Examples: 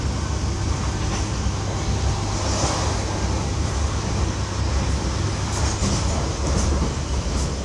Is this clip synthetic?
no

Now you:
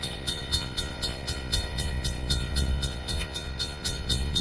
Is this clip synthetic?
yes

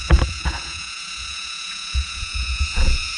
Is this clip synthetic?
yes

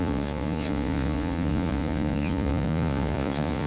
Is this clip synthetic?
yes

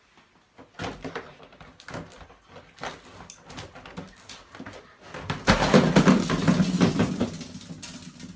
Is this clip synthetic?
no